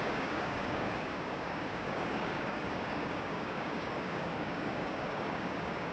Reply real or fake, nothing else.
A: fake